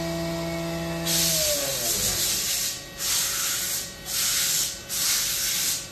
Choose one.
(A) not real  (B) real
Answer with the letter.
B